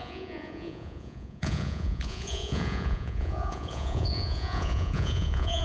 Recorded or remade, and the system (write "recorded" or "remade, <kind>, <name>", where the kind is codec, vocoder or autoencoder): remade, vocoder, Vocos